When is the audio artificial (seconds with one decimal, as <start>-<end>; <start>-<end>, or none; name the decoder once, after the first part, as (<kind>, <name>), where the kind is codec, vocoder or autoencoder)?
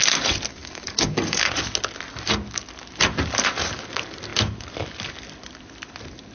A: 0.5-1.5 (codec, DAC)